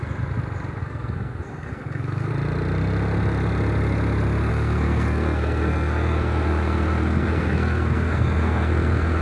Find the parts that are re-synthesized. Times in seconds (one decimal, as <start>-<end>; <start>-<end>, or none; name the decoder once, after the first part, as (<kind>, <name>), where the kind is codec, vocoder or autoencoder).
0.8-2.3 (codec, SNAC); 4.5-9.2